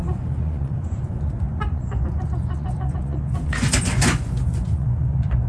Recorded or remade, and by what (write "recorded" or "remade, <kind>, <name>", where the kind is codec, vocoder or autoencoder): remade, vocoder, Vocos